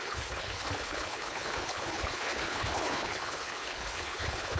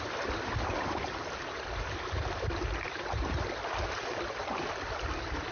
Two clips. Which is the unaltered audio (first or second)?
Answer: second